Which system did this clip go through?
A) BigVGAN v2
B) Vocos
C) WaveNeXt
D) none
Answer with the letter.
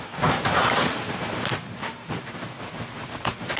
A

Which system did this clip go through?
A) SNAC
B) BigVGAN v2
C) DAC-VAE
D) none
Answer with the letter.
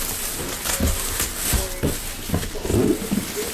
D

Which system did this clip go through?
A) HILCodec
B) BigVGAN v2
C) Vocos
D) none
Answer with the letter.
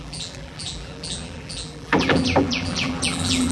B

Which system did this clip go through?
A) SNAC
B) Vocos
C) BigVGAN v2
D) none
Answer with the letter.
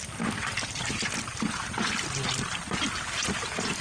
C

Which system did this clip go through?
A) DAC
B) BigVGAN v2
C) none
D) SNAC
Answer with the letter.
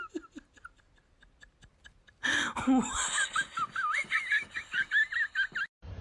C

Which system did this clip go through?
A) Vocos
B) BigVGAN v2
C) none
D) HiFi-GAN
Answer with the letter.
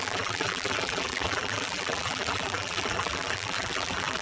B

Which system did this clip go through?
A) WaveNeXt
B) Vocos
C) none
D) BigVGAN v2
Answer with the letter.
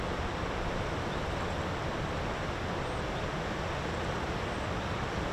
C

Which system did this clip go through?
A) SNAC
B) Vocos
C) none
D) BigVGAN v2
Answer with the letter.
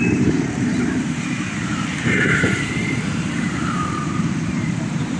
D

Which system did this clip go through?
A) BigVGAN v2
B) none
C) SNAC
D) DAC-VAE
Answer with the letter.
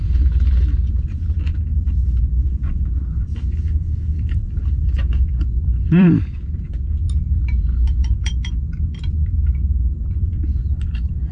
A